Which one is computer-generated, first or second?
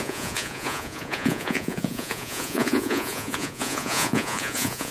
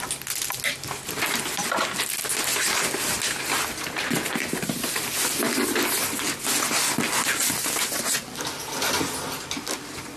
first